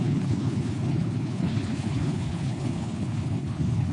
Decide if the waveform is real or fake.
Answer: fake